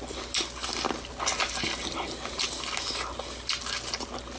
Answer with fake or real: real